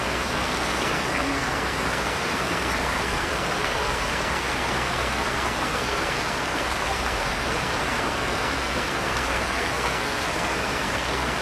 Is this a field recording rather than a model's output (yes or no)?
no